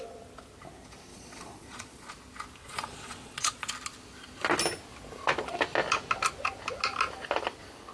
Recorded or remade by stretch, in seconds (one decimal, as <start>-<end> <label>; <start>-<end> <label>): 0.0-1.1 recorded; 1.1-2.1 remade; 2.1-2.6 recorded; 2.6-3.7 remade; 3.7-7.9 recorded

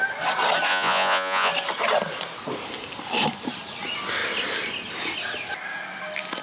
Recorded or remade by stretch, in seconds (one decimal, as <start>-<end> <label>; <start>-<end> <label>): 0.0-0.7 recorded; 0.7-1.5 remade; 1.5-6.4 recorded

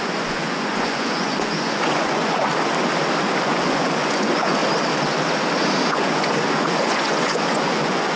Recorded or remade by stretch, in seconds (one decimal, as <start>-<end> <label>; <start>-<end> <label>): 0.0-2.5 remade; 2.5-3.4 recorded; 3.4-4.6 remade; 4.6-5.9 recorded; 5.9-8.2 remade

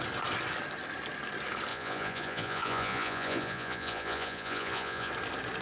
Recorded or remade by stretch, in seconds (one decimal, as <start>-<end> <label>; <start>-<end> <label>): 0.0-1.7 recorded; 1.7-5.1 remade; 5.1-5.6 recorded

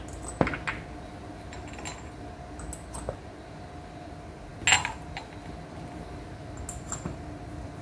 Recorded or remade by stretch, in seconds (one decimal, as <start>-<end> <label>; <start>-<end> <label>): 0.0-7.8 recorded

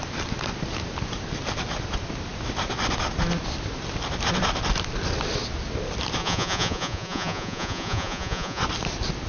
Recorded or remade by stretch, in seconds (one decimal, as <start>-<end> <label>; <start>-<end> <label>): 0.0-6.2 recorded; 6.2-8.6 remade; 8.6-9.3 recorded

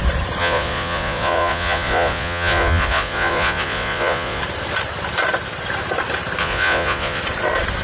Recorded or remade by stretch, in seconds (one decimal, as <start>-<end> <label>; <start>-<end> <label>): 0.0-0.4 recorded; 0.4-4.4 remade; 4.4-6.4 recorded; 6.4-7.2 remade; 7.2-7.8 recorded